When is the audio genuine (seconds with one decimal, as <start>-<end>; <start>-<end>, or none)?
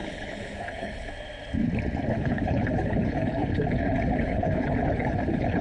1.1-2.1